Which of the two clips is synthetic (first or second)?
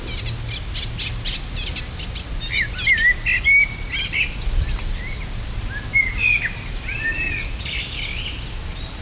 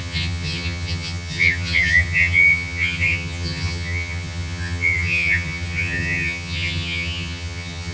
second